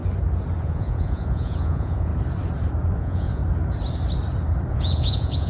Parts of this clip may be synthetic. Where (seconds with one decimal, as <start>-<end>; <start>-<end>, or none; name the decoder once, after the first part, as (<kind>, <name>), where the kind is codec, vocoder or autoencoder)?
0.6-2.1 (vocoder, Vocos); 3.0-3.4; 4.7-5.5